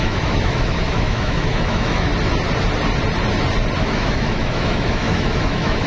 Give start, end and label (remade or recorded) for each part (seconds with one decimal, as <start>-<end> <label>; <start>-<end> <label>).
0.0-2.1 remade; 2.1-3.8 recorded; 3.8-5.9 remade